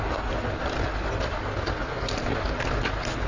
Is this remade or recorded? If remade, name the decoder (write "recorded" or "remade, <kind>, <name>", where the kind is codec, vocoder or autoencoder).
recorded